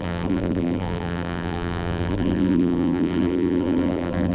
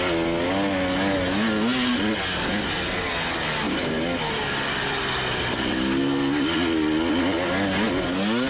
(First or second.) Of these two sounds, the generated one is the first